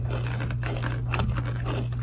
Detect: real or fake real